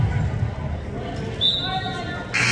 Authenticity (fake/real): real